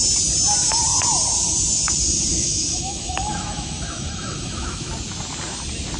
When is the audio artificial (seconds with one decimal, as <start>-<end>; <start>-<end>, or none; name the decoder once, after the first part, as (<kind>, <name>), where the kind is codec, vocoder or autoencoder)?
2.3-4.9 (autoencoder, DAC-VAE)